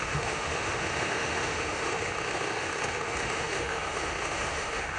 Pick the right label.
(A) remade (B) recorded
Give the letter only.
A